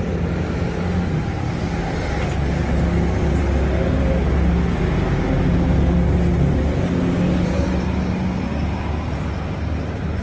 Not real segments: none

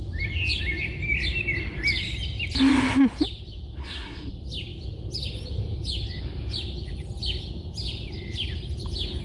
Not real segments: 3.8-4.3

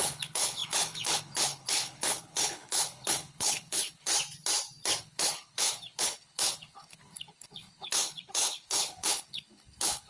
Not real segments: 0.0-4.1; 5.0-10.1

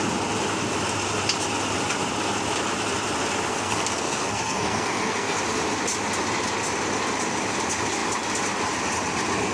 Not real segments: 3.5-5.4